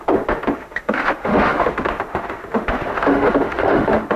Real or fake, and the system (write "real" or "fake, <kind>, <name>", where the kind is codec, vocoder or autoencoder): fake, autoencoder, DAC-VAE